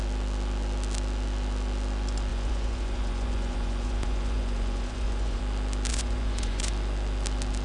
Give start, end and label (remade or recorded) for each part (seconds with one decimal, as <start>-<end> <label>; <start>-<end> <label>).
0.0-2.3 recorded; 2.3-5.4 remade; 5.4-5.9 recorded; 5.9-6.7 remade; 6.7-7.6 recorded